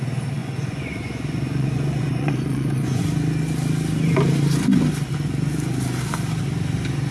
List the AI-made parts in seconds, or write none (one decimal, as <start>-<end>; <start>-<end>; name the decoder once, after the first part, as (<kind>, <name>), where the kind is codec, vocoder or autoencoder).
0.4-3.0 (vocoder, Vocos)